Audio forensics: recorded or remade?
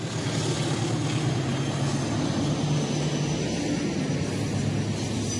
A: recorded